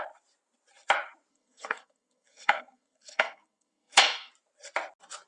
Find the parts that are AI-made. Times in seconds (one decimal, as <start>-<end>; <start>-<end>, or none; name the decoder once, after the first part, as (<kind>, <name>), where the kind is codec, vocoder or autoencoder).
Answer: 1.3-4.3 (codec, SNAC)